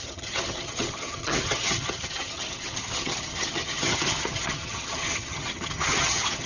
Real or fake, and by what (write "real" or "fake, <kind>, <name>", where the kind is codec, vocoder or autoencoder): fake, vocoder, HiFi-GAN